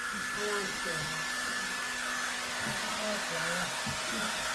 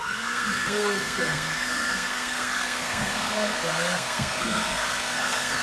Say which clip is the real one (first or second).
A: first